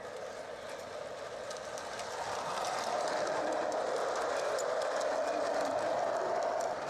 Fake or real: real